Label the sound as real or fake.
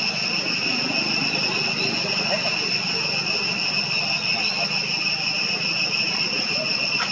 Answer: real